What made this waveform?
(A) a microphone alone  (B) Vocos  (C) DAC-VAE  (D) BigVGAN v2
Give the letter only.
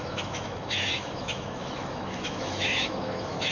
C